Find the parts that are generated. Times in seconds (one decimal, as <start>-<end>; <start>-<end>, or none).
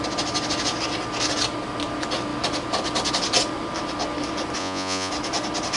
4.6-5.1